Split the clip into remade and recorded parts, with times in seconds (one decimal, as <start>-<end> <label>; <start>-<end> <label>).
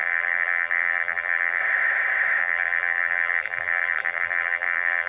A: 0.0-1.6 remade; 1.6-2.4 recorded; 2.4-5.1 remade